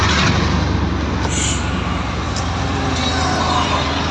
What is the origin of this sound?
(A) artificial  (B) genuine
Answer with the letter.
B